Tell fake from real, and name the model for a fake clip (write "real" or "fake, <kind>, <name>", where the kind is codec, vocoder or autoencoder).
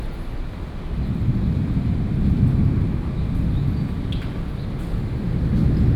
real